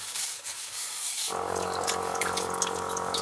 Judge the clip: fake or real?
fake